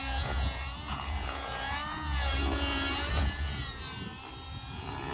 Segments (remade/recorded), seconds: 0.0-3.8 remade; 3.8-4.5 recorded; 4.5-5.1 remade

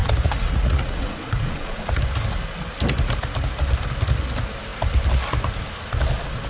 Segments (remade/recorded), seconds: 0.0-2.0 remade; 2.0-6.5 recorded